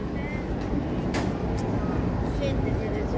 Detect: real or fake real